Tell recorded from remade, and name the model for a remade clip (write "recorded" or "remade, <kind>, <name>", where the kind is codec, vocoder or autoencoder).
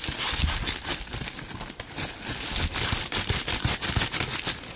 recorded